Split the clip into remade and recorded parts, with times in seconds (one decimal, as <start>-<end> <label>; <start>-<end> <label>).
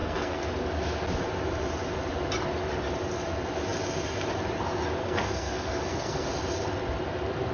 0.0-0.5 remade; 0.5-5.0 recorded; 5.0-6.3 remade; 6.3-7.5 recorded